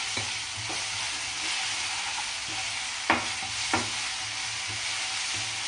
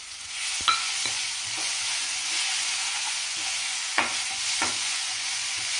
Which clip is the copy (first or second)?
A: second